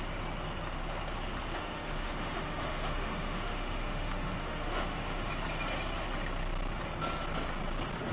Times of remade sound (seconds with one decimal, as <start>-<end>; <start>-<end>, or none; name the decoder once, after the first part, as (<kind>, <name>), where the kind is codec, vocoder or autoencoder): 1.6-5.3 (autoencoder, DAC-VAE)

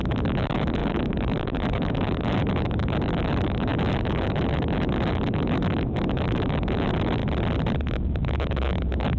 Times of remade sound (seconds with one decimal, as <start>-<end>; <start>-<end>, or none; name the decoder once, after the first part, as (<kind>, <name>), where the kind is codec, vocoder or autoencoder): 0.0-7.2 (autoencoder, DAC-VAE); 7.9-9.2